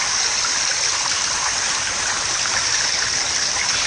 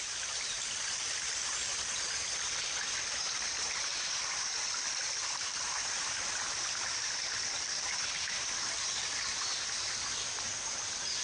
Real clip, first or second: first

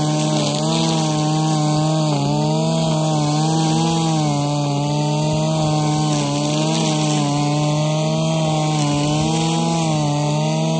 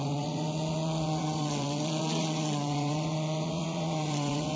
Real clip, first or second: first